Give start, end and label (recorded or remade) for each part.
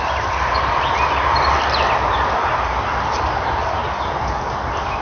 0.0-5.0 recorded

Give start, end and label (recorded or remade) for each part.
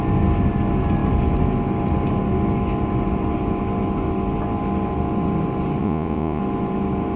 0.0-5.8 recorded; 5.8-6.4 remade; 6.4-7.2 recorded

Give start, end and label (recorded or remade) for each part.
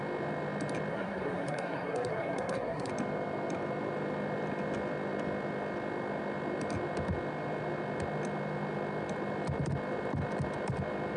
0.0-0.9 recorded; 0.9-2.9 remade; 2.9-11.2 recorded